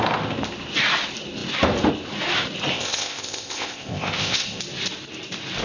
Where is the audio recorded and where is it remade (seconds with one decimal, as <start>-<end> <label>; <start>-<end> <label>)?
0.0-2.7 recorded; 2.7-4.6 remade; 4.6-5.6 recorded